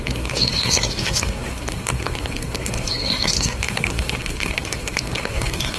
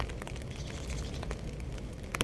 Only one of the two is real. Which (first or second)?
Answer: second